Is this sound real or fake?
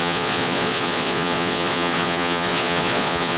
fake